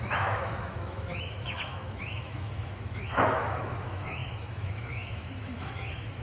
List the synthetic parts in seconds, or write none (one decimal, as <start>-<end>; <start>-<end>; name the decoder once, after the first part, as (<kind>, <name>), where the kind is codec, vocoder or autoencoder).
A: 0.0-6.2 (autoencoder, DAC-VAE)